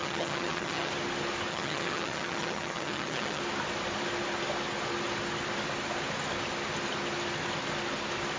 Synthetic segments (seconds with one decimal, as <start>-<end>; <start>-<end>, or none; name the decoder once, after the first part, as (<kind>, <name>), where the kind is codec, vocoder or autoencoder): 0.0-0.9 (vocoder, HiFi-GAN); 1.5-3.4